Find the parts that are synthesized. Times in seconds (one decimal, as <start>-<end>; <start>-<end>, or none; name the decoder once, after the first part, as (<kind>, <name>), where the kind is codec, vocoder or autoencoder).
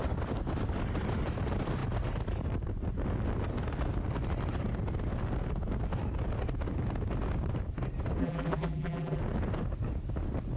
8.2-9.2 (vocoder, BigVGAN v2)